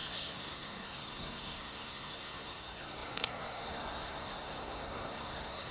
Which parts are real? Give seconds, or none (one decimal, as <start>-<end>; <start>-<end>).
none